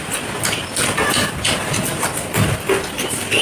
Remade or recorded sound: recorded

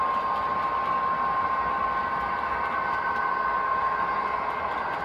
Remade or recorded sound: recorded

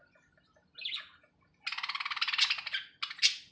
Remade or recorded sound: recorded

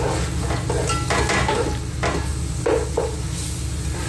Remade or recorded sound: recorded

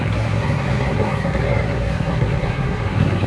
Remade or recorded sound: remade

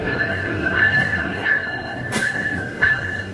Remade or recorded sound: remade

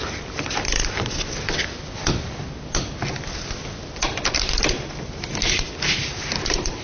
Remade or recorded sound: recorded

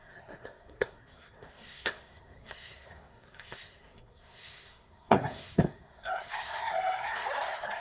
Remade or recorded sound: remade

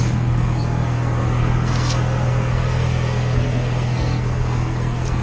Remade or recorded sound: remade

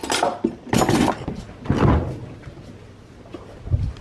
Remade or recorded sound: recorded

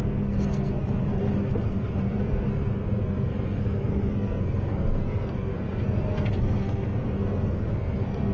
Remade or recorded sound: remade